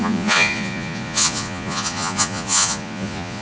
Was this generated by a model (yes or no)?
yes